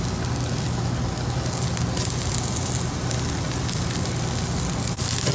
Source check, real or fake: real